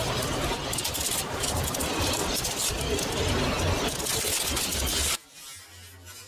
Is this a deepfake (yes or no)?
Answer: no